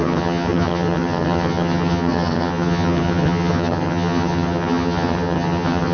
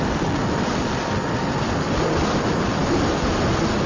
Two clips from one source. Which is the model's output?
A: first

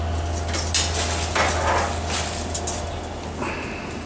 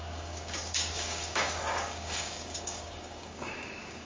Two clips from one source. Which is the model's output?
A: second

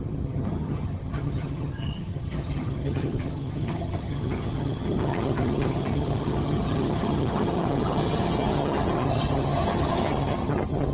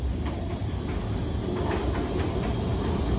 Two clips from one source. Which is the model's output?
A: first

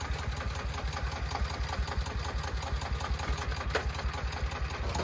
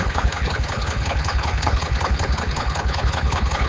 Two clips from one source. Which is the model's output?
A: second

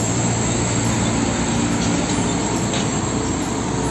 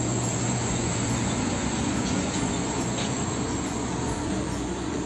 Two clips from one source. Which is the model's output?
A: second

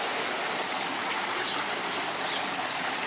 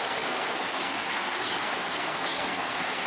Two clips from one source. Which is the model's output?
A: second